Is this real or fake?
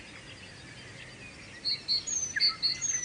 real